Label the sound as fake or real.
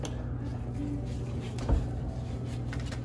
real